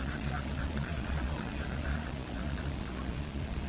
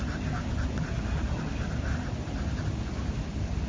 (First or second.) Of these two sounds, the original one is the second